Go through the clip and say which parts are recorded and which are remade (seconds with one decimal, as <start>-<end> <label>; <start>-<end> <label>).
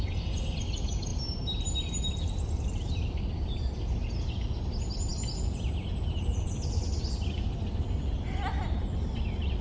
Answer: 0.0-9.6 recorded